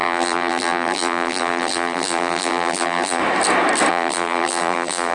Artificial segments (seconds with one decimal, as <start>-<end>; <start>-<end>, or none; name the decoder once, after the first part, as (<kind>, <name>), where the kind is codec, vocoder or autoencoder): 0.0-3.2 (vocoder, BigVGAN v2); 3.9-5.1